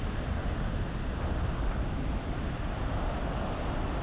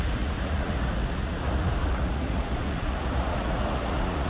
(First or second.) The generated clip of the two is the second